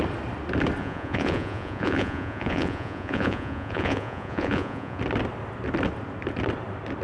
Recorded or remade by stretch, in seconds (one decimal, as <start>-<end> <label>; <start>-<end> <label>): 0.0-0.8 recorded; 0.8-5.0 remade; 5.0-7.0 recorded